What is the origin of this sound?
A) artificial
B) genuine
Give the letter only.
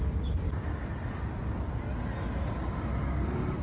B